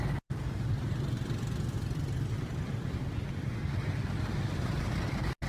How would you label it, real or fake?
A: real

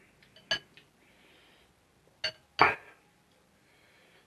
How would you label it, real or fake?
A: real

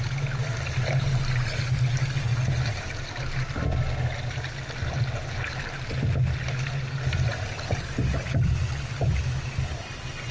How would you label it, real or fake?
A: real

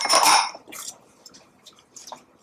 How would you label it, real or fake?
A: fake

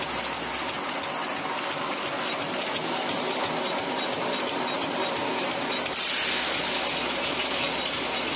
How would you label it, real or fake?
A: real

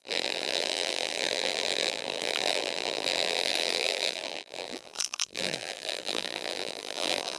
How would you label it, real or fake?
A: fake